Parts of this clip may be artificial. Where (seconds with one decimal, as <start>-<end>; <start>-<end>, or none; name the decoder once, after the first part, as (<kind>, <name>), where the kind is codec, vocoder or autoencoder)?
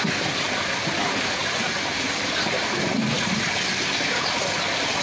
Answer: none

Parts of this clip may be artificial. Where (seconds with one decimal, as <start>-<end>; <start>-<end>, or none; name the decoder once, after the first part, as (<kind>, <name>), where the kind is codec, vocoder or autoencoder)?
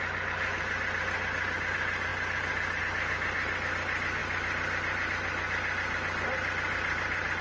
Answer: none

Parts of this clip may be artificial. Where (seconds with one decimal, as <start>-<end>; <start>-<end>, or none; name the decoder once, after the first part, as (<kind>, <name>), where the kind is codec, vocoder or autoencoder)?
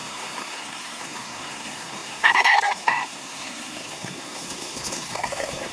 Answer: 0.0-5.7 (codec, SNAC)